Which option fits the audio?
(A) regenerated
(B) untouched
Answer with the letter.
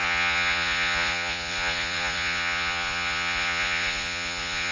A